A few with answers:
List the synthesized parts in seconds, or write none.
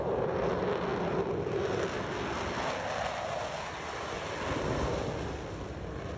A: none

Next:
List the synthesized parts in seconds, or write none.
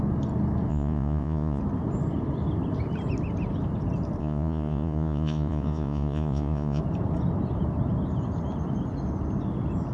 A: 0.7-1.6 (vocoder, Vocos); 4.2-6.8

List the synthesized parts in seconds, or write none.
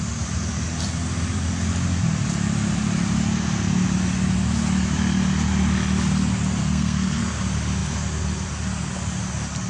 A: 6.6-7.2 (codec, SNAC)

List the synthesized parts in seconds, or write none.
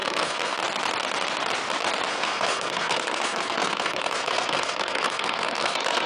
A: 0.0-0.6 (codec, SNAC); 2.1-6.1